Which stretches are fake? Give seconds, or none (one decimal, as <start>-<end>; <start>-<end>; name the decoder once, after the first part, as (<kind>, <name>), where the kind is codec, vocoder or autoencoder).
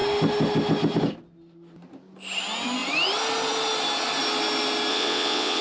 4.9-5.6 (vocoder, WaveNeXt)